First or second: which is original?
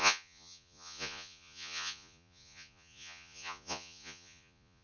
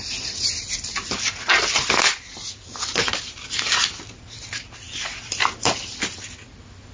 second